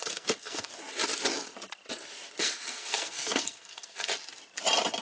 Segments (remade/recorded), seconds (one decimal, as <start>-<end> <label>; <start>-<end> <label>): 0.0-0.7 remade; 0.7-2.4 recorded; 2.4-4.1 remade; 4.1-5.0 recorded